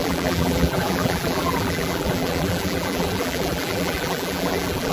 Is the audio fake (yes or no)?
yes